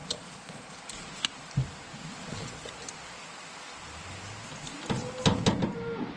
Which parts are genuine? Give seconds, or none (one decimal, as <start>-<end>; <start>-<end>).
0.8-2.0; 2.5-6.2